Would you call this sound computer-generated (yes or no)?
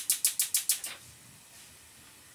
no